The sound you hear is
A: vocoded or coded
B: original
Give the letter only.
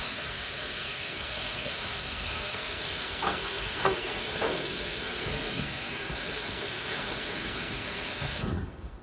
A